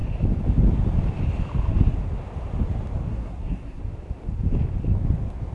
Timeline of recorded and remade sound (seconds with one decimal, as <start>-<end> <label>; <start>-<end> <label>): 0.0-3.1 recorded; 3.1-3.8 remade; 3.8-5.5 recorded